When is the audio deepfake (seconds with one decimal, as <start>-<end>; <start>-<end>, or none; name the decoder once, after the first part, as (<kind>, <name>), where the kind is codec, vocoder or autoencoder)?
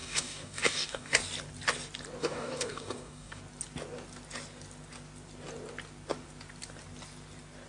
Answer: 0.0-1.2 (codec, DAC); 2.2-3.4